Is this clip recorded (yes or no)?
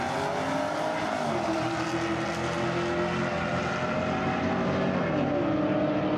yes